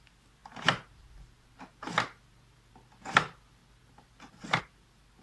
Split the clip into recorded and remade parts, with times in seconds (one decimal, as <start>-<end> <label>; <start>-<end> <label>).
0.0-5.2 recorded

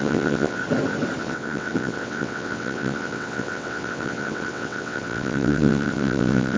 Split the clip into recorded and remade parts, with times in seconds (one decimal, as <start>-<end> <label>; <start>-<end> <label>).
0.0-0.6 remade; 0.6-1.2 recorded; 1.2-6.6 remade

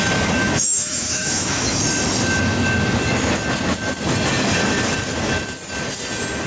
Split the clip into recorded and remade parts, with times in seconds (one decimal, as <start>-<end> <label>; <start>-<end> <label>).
0.0-0.4 recorded; 0.4-1.8 remade; 1.8-6.5 recorded

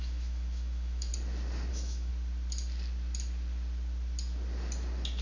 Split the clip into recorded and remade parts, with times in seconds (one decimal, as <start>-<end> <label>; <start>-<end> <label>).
0.0-1.1 remade; 1.1-1.7 recorded; 1.7-2.1 remade; 2.1-5.2 recorded

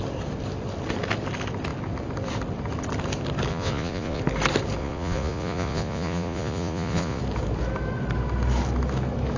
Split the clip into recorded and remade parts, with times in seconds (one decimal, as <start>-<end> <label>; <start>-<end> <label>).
0.0-3.5 recorded; 3.5-4.2 remade; 4.2-4.8 recorded; 4.8-7.2 remade; 7.2-9.4 recorded